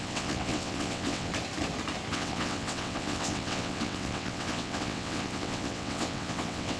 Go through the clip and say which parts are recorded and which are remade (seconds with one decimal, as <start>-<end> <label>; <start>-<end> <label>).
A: 0.0-1.3 remade; 1.3-2.1 recorded; 2.1-6.8 remade

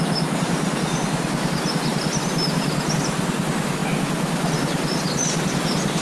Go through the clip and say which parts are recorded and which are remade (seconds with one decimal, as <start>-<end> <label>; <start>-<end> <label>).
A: 0.0-6.0 recorded

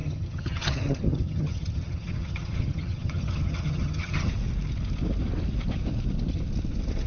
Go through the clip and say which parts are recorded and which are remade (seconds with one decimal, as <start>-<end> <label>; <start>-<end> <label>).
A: 0.0-4.3 remade; 4.3-7.1 recorded

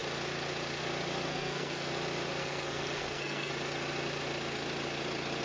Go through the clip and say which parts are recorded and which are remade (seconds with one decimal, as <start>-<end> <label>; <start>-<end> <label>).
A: 0.0-1.3 recorded; 1.3-1.9 remade; 1.9-2.4 recorded; 2.4-3.5 remade; 3.5-5.4 recorded

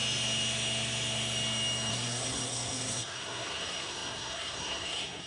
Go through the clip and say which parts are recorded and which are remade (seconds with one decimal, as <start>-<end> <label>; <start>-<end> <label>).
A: 0.0-1.9 recorded; 1.9-5.3 remade

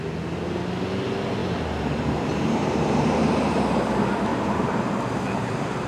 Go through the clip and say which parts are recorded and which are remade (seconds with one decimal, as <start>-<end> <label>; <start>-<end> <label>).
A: 0.0-1.4 recorded; 1.4-3.2 remade; 3.2-4.3 recorded; 4.3-4.9 remade; 4.9-5.9 recorded

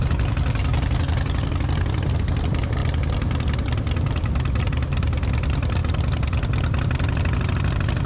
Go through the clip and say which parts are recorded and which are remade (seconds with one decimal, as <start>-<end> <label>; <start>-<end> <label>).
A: 0.0-8.1 recorded

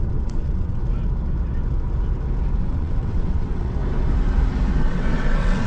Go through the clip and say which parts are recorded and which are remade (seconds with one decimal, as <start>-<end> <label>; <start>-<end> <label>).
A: 0.0-0.8 remade; 0.8-2.6 recorded; 2.6-3.8 remade; 3.8-4.8 recorded; 4.8-5.7 remade